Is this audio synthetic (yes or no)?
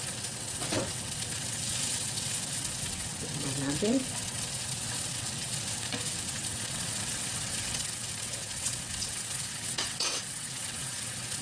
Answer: yes